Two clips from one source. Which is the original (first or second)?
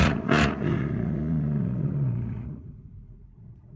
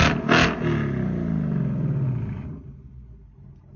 second